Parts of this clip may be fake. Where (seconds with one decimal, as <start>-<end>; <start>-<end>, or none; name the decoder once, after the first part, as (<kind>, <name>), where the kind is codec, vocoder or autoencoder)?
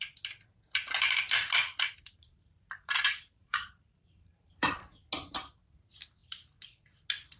1.6-4.7 (vocoder, BigVGAN v2)